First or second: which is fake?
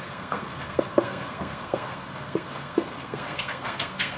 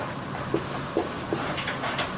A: first